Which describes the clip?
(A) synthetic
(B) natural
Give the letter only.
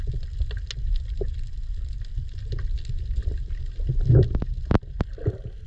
B